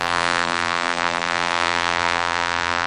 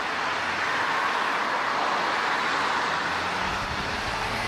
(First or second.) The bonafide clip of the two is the second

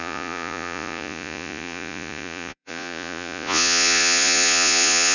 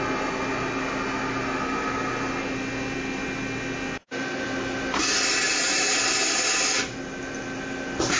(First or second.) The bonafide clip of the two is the second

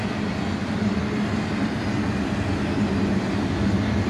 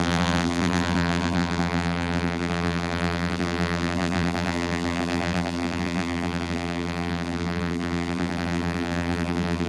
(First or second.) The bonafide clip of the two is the first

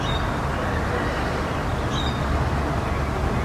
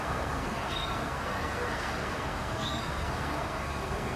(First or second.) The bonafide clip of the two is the first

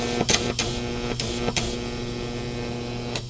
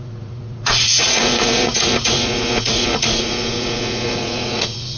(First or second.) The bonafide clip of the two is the first